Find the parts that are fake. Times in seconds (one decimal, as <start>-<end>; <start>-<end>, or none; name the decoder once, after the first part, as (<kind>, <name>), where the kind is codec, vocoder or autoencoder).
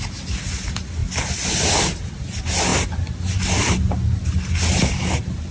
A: none